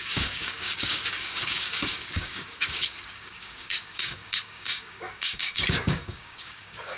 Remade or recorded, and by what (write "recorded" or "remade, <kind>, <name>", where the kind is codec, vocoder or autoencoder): remade, codec, DAC